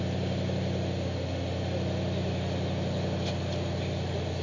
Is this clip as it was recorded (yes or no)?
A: yes